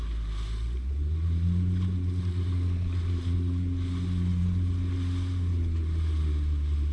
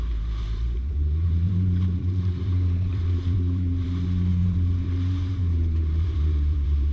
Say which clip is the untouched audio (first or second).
first